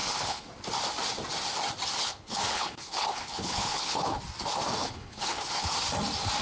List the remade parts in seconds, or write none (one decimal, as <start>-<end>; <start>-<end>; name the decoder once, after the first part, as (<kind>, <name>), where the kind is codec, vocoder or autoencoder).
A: 0.0-0.5 (codec, HILCodec); 2.0-4.2; 4.8-5.7